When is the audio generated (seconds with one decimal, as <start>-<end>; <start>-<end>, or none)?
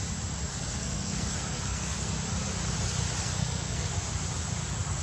0.5-2.1; 3.2-3.9